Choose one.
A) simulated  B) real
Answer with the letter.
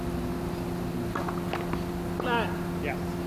B